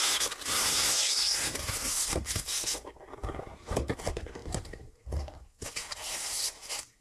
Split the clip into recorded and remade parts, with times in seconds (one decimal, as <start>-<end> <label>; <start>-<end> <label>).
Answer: 0.0-7.0 remade